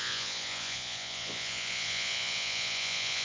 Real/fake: fake